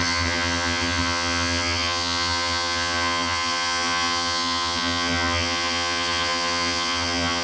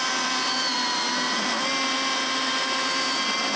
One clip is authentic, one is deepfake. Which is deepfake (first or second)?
first